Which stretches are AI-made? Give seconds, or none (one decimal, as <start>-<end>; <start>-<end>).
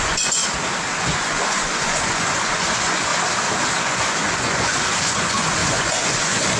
0.0-0.4; 1.0-3.1; 3.8-6.6